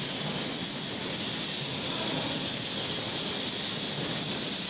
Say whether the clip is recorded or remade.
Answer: recorded